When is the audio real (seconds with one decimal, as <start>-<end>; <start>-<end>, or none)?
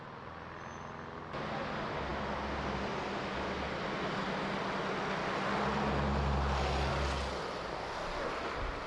0.0-7.7; 8.3-8.9